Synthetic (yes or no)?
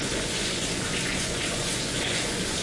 yes